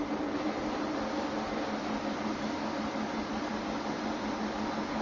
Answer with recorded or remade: recorded